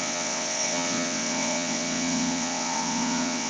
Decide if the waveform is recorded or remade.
remade